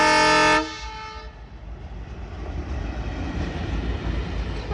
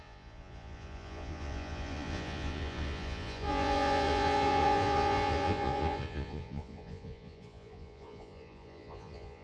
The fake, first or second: second